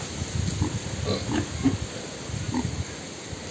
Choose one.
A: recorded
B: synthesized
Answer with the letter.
A